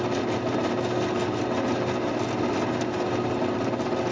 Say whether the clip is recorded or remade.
recorded